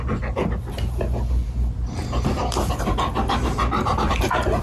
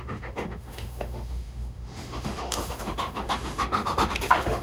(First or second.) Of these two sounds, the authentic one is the first